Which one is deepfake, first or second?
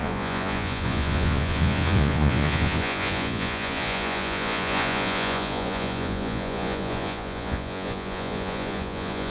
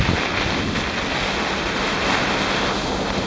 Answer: first